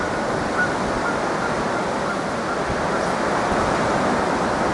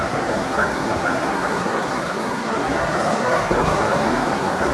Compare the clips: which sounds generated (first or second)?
second